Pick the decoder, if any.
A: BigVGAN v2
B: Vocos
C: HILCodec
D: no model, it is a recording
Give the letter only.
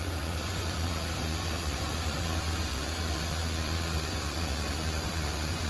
B